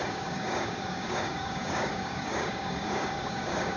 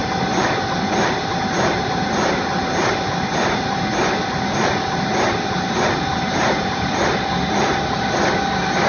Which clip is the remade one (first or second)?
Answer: first